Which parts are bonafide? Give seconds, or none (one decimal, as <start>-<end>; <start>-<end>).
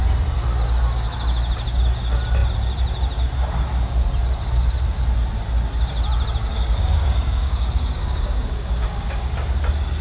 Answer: 0.0-6.5; 9.3-10.0